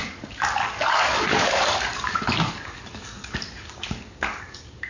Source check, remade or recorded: remade